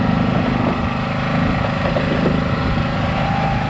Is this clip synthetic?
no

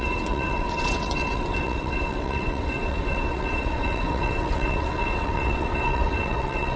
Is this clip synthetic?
yes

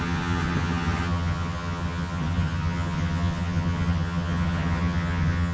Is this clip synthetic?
yes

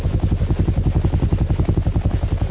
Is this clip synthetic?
no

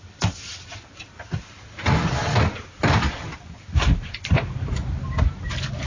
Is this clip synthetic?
no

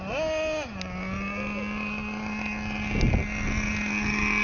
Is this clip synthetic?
no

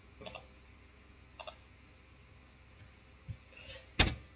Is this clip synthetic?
no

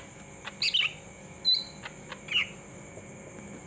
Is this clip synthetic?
no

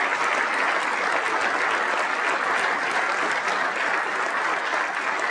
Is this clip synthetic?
no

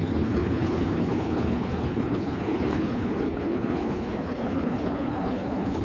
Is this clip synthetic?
yes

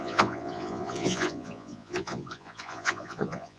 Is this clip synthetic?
yes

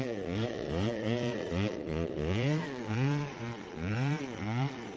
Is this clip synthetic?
yes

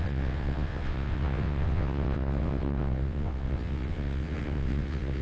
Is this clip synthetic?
yes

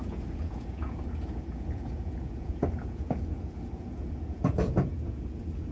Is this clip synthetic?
yes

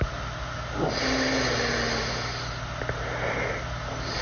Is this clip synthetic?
no